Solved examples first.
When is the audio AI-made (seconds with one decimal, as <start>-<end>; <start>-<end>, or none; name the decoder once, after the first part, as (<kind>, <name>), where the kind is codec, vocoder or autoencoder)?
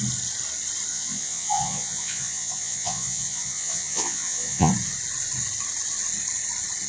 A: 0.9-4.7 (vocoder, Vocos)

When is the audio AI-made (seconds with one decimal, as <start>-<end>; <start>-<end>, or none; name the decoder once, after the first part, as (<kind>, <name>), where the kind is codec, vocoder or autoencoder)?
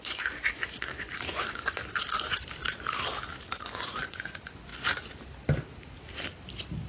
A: 0.0-1.8 (vocoder, Vocos); 3.5-4.7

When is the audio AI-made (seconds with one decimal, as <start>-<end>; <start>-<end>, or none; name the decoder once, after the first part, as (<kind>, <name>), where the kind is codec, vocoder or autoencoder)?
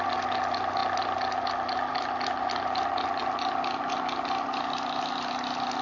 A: none